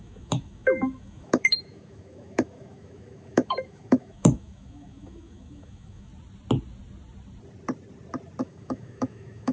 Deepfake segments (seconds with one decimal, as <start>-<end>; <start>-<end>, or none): 0.0-6.1; 8.4-9.5